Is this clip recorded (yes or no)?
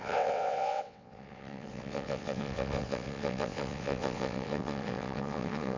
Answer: no